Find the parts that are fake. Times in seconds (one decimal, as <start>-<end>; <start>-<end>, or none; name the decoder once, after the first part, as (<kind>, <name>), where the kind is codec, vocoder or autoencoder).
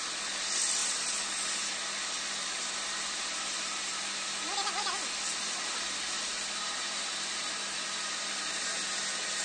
none